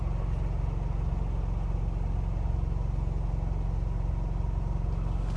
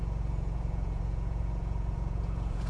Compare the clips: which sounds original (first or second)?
first